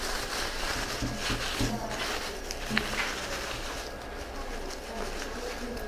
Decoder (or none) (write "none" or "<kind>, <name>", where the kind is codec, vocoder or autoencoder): none